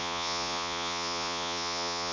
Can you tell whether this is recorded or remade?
remade